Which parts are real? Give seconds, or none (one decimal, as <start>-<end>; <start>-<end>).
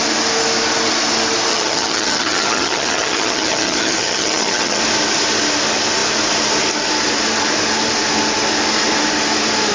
0.0-1.5; 4.8-9.7